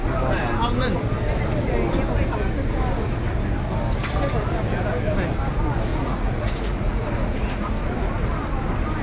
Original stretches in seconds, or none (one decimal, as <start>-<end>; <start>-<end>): 0.0-5.9; 7.7-9.0